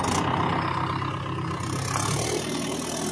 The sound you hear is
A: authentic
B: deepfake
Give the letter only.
A